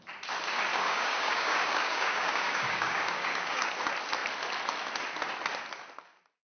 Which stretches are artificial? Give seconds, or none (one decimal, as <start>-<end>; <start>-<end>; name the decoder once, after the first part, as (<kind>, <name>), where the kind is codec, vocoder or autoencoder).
0.7-3.7 (codec, DAC)

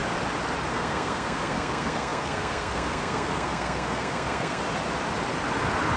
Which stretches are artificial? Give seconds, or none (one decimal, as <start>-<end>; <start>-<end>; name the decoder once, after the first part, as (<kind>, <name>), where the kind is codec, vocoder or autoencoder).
0.7-4.6 (codec, SNAC)

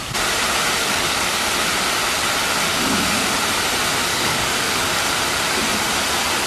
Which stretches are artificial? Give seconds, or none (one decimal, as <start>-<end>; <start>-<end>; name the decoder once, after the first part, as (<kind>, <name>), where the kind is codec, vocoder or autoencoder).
0.8-1.5 (codec, DAC); 2.7-3.3; 4.1-5.0